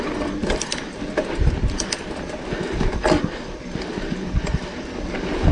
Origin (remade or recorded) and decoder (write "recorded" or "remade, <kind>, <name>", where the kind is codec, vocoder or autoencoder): recorded